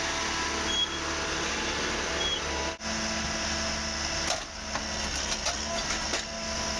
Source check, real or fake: real